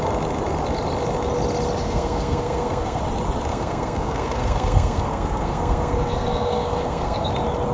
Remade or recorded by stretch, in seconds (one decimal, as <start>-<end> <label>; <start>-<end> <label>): 0.0-1.8 recorded; 1.8-3.0 remade; 3.0-3.5 recorded; 3.5-7.3 remade; 7.3-7.7 recorded